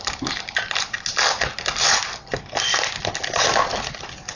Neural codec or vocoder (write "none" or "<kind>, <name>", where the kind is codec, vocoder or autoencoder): none